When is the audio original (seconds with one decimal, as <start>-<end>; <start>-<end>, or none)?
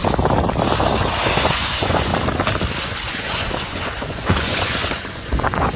0.0-1.4; 2.1-2.8